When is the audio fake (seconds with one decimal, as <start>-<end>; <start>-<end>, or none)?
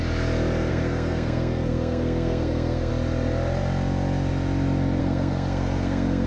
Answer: 0.7-2.9; 5.0-6.3